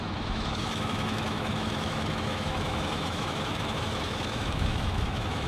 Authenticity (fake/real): fake